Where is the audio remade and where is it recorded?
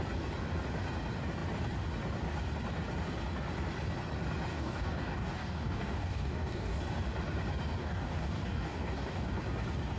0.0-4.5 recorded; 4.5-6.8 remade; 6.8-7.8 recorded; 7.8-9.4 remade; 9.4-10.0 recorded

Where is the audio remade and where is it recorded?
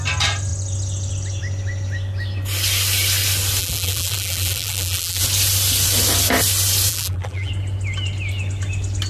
0.0-3.6 recorded; 3.6-5.2 remade; 5.2-6.9 recorded; 6.9-7.5 remade; 7.5-9.1 recorded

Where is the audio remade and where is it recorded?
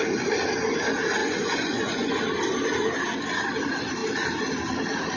0.0-1.2 recorded; 1.2-2.2 remade; 2.2-5.2 recorded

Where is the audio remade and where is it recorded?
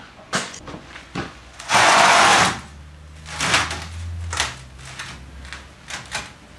0.0-2.3 remade; 2.3-6.6 recorded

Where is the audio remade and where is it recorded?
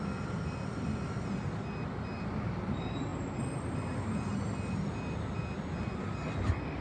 0.0-6.8 recorded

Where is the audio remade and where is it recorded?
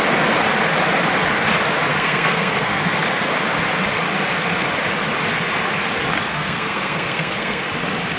0.0-1.9 recorded; 1.9-2.8 remade; 2.8-6.3 recorded; 6.3-7.6 remade; 7.6-8.2 recorded